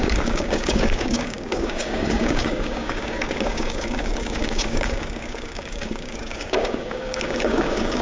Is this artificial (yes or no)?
yes